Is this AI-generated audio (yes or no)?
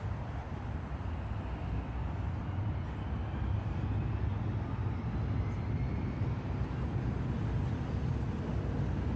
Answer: no